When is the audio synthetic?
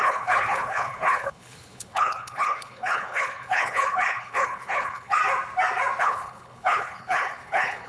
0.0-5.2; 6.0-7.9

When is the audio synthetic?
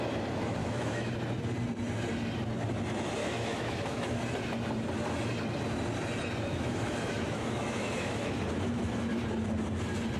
0.6-1.1; 3.2-4.2; 6.5-8.3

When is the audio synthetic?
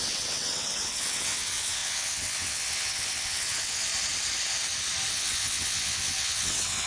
0.0-3.9; 5.1-6.9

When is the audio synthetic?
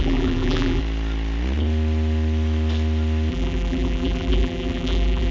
0.0-0.8; 3.3-5.3